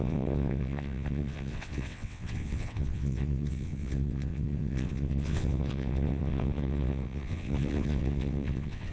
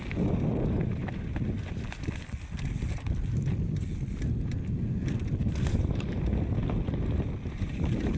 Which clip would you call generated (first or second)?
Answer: first